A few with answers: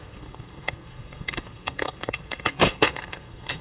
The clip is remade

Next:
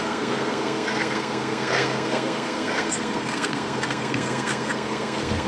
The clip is remade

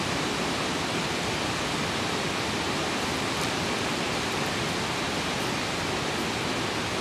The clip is recorded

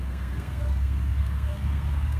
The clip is remade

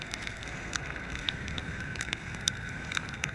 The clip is remade